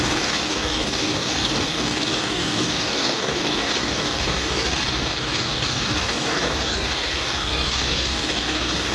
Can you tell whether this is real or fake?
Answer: fake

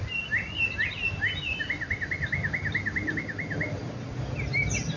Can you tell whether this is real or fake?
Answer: real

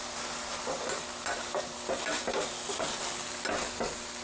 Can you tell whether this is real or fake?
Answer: real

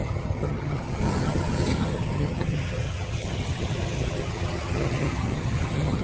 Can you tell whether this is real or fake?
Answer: fake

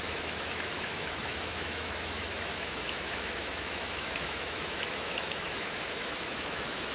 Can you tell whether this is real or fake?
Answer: fake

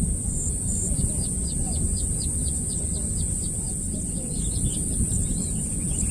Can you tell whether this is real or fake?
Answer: fake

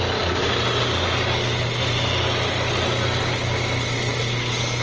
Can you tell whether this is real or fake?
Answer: real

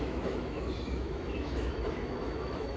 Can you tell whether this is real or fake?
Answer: fake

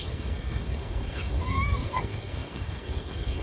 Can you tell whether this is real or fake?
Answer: fake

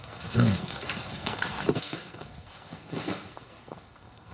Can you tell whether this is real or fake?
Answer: fake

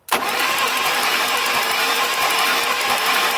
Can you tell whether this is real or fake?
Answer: fake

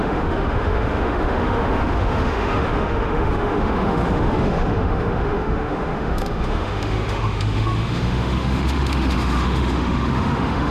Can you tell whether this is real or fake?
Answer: fake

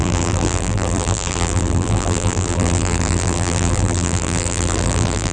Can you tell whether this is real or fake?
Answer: fake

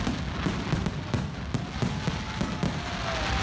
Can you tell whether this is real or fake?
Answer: real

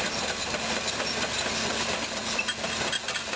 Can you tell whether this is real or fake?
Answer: real